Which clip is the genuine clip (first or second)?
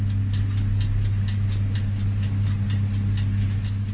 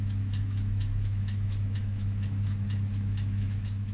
first